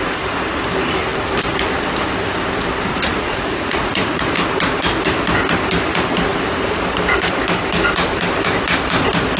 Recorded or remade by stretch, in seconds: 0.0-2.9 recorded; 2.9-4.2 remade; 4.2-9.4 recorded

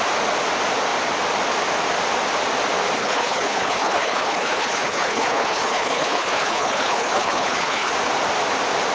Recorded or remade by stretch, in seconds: 0.0-3.0 recorded; 3.0-7.9 remade; 7.9-8.9 recorded

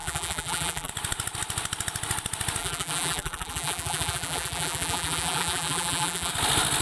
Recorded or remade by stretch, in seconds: 0.0-0.9 remade; 0.9-2.6 recorded; 2.6-6.3 remade; 6.3-6.8 recorded

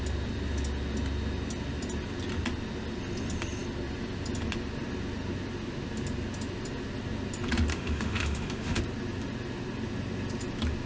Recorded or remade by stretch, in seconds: 0.0-7.7 recorded; 7.7-8.8 remade; 8.8-10.9 recorded

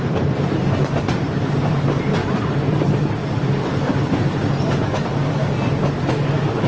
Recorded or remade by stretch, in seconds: 0.0-3.2 remade; 3.2-5.7 recorded; 5.7-6.7 remade

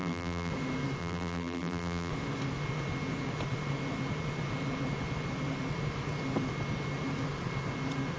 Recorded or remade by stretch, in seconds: 0.0-0.5 remade; 0.5-1.0 recorded; 1.0-2.1 remade; 2.1-8.2 recorded

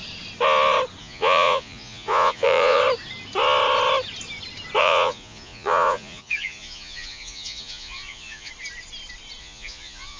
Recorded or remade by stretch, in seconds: 0.0-1.0 recorded; 1.0-2.8 remade; 2.8-4.8 recorded; 4.8-8.5 remade; 8.5-9.4 recorded; 9.4-10.2 remade

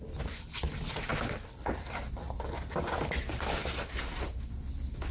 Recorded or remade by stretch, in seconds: 0.0-5.1 recorded